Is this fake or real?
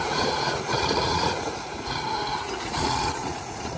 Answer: fake